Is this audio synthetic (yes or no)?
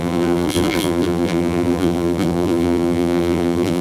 yes